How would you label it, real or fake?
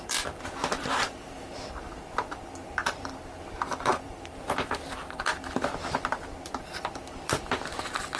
fake